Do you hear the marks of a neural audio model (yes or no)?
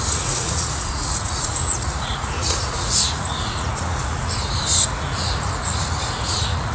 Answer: yes